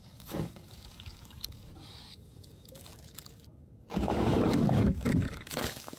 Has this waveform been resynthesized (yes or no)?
yes